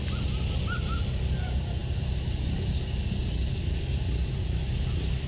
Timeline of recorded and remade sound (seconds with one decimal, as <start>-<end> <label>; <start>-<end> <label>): 0.0-5.3 recorded